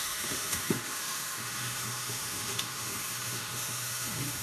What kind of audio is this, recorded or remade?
remade